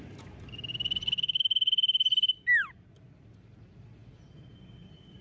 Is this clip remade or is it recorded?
recorded